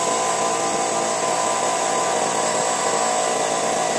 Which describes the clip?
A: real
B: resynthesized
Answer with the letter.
A